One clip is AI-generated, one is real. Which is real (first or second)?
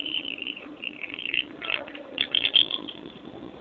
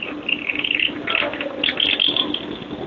second